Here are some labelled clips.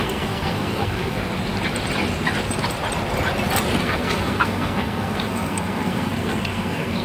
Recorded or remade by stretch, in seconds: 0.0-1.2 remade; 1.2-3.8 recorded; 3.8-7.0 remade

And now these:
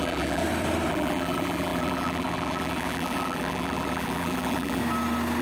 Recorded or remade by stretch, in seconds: 0.0-0.4 remade; 0.4-0.9 recorded; 0.9-4.8 remade; 4.8-5.4 recorded

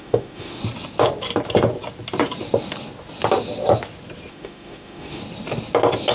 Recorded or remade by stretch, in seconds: 0.0-0.6 remade; 0.6-4.3 recorded; 4.3-5.2 remade; 5.2-6.1 recorded

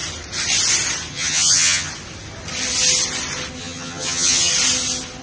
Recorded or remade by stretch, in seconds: 0.0-1.1 recorded; 1.1-1.9 remade; 1.9-3.6 recorded; 3.6-4.5 remade; 4.5-5.2 recorded

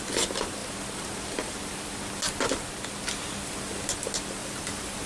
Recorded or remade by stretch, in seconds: 0.0-4.4 recorded; 4.4-5.1 remade

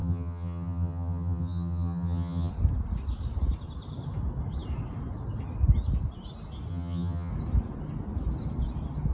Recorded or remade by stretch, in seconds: 0.0-2.5 remade; 2.5-6.7 recorded; 6.7-7.3 remade; 7.3-9.1 recorded